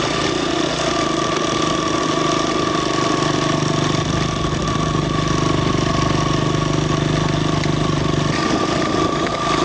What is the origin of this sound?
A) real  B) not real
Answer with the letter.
A